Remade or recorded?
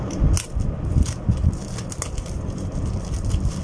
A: recorded